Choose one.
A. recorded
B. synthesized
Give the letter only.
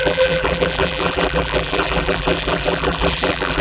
B